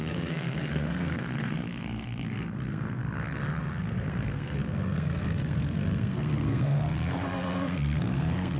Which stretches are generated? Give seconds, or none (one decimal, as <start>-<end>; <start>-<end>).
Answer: 0.0-3.0; 3.6-8.6